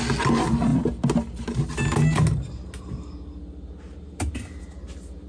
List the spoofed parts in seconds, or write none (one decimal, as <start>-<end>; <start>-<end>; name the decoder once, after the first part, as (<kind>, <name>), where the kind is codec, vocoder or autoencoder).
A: none